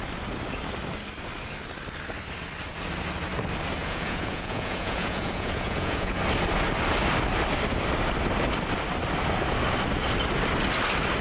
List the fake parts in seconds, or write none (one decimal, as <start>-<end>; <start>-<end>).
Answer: 3.8-6.2